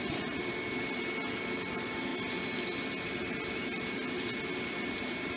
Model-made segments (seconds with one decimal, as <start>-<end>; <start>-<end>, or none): none